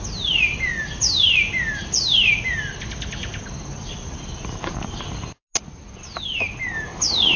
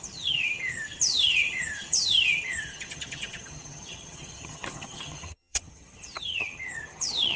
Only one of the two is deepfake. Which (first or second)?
second